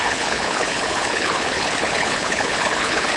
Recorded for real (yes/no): no